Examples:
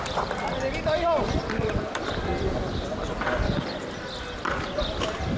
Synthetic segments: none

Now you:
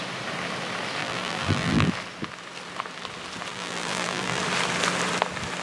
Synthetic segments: 1.0-1.9 (vocoder, BigVGAN v2); 3.5-4.4

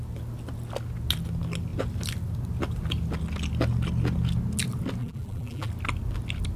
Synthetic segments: 5.0-5.7 (vocoder, BigVGAN v2)

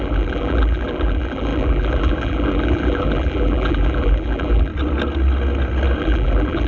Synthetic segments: 0.0-4.7 (vocoder, BigVGAN v2); 6.0-6.7

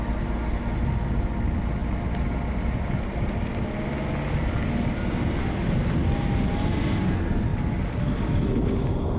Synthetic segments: 7.5-8.0 (vocoder, BigVGAN v2)

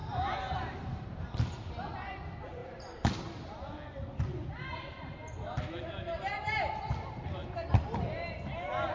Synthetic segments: 0.0-1.2 (vocoder, BigVGAN v2)